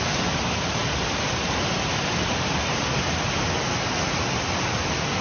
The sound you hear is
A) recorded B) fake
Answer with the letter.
A